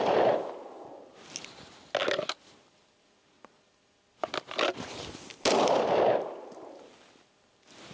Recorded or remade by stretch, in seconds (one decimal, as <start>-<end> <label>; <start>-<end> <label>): 0.0-7.9 recorded